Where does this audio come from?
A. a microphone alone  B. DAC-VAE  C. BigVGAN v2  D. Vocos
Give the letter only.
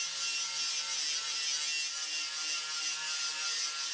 A